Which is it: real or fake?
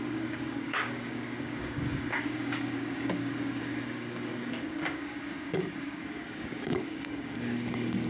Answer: fake